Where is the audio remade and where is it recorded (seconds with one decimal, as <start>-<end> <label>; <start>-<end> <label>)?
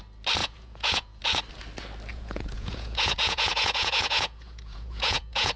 0.0-0.4 recorded; 0.4-1.2 remade; 1.2-2.1 recorded; 2.1-5.6 remade